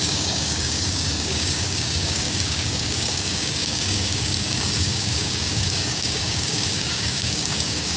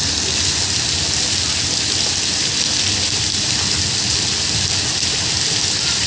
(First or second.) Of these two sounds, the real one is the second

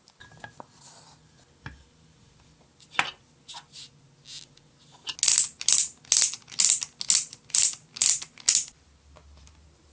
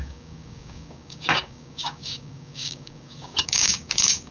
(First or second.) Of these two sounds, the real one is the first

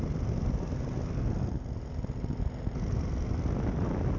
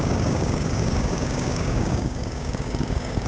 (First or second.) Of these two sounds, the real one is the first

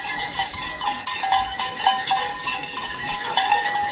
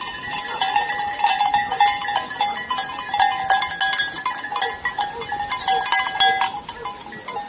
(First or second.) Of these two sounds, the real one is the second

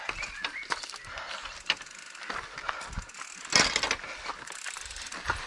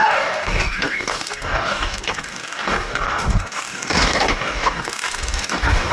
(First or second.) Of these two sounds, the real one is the first